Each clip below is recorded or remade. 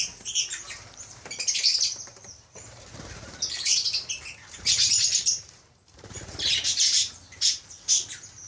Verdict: remade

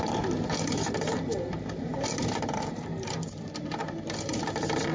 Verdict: remade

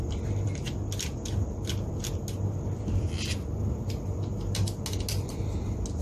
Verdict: recorded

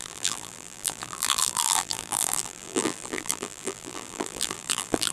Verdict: remade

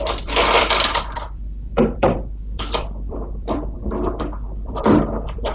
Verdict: remade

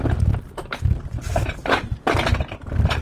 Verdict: recorded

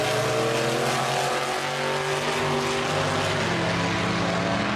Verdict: recorded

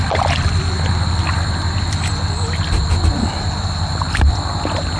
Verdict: recorded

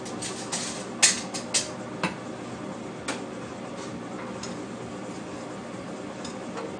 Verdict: recorded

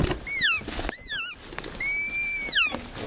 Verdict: recorded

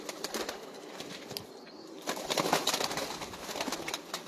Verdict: recorded